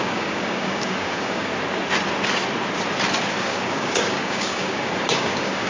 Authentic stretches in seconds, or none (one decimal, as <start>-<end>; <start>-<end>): 1.5-3.3